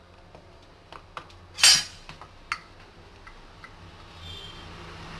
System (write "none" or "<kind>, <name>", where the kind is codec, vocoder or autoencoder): none